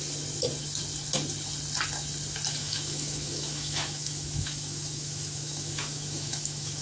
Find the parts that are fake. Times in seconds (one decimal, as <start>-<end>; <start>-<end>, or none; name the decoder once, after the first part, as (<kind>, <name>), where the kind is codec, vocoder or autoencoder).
2.6-6.8 (autoencoder, DAC-VAE)